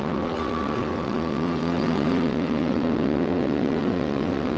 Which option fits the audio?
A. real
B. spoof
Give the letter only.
B